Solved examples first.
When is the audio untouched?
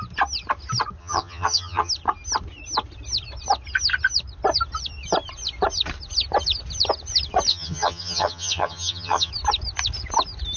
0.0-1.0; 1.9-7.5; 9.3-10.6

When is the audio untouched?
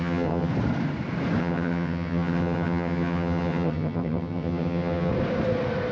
0.5-1.4; 5.1-5.9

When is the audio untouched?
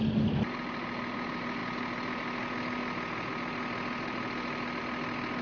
0.0-5.4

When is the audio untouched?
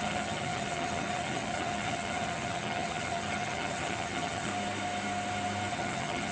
4.5-5.7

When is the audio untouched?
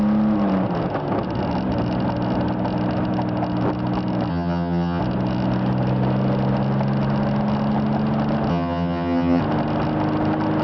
0.0-4.3; 5.0-8.5; 9.4-10.6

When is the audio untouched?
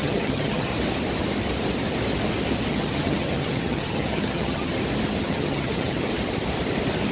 0.7-2.7; 4.7-5.2; 6.1-7.1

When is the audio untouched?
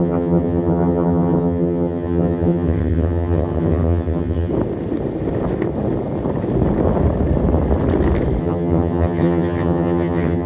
4.5-8.4